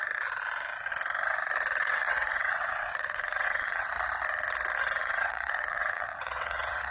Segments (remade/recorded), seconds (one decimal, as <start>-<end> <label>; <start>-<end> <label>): 0.0-1.8 recorded; 1.8-3.9 remade; 3.9-5.0 recorded; 5.0-6.9 remade